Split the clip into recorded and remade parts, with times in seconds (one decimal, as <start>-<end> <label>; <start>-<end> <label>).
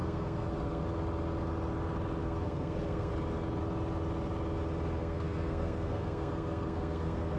0.0-0.8 remade; 0.8-2.2 recorded; 2.2-3.1 remade; 3.1-5.0 recorded; 5.0-7.4 remade